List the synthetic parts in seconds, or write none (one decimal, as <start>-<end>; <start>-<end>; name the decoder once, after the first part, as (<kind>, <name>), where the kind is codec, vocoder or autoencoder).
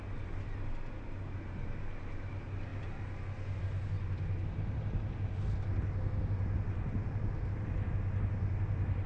none